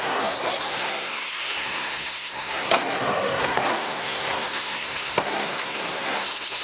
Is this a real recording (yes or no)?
no